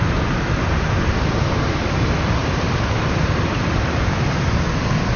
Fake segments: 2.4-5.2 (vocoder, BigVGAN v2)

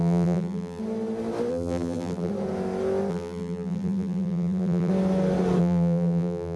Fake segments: 0.0-0.8 (vocoder, BigVGAN v2); 1.5-2.3; 3.1-4.9; 5.6-6.6